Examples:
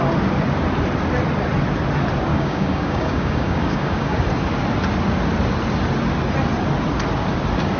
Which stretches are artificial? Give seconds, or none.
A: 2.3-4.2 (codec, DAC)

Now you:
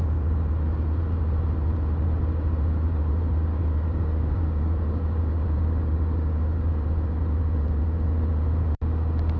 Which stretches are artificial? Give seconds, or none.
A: 3.5-6.7 (codec, DAC)